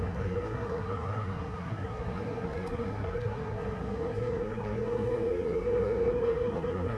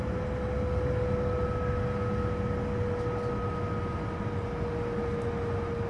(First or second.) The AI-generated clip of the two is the first